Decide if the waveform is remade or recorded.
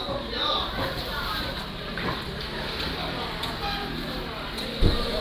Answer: recorded